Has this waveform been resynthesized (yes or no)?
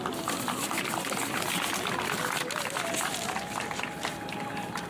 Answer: no